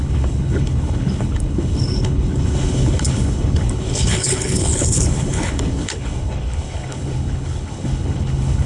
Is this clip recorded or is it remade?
remade